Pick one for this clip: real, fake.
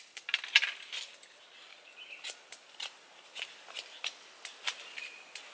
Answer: real